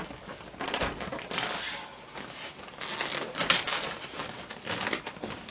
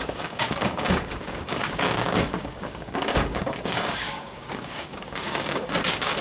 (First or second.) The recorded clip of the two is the first